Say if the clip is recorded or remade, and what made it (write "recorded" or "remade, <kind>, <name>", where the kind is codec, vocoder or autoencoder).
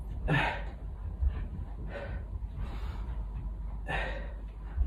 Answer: remade, vocoder, BigVGAN v2